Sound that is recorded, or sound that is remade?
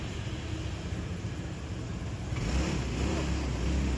recorded